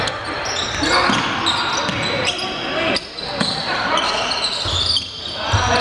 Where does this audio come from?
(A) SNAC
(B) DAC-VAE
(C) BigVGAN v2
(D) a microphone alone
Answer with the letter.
D